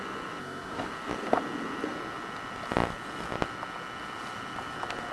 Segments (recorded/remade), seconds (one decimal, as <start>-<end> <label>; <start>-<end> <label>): 0.0-0.4 recorded; 0.4-0.9 remade; 0.9-5.1 recorded